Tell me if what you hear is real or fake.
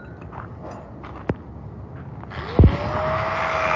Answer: real